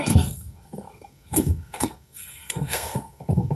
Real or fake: fake